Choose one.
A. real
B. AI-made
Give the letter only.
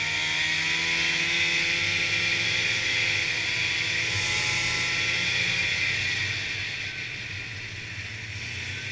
A